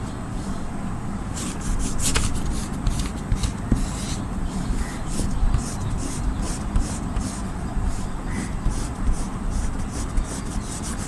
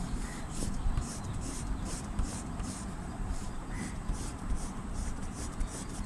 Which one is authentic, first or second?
first